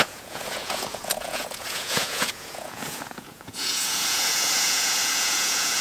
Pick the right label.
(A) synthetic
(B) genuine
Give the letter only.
A